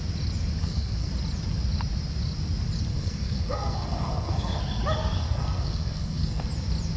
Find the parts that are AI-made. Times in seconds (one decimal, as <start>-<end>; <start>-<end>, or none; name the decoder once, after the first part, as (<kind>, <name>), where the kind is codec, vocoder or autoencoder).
0.6-1.1 (codec, SNAC); 2.9-4.6; 5.0-6.4